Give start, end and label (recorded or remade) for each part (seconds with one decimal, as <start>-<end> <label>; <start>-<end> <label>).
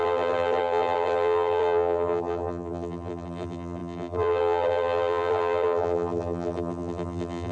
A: 0.0-7.5 remade